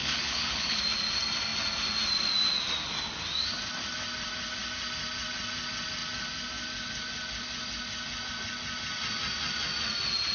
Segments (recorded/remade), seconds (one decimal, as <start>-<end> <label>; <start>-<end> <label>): 0.0-0.8 remade; 0.8-10.3 recorded